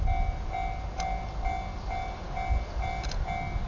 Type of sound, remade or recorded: recorded